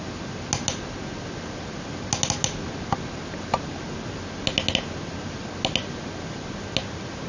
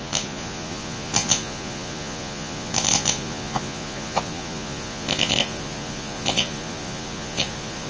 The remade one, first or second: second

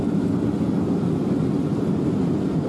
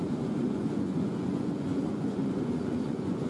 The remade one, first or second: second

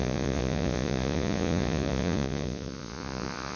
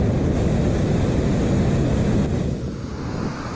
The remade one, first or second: first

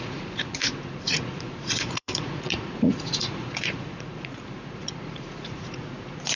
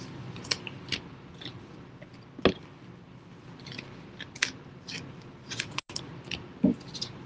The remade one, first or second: first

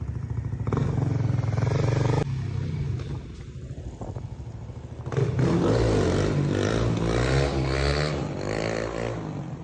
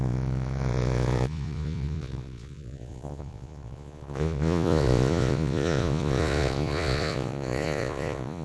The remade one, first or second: second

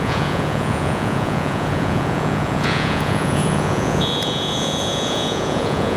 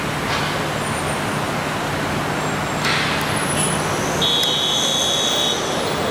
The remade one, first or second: first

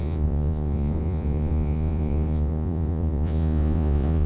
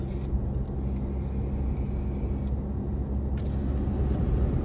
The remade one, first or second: first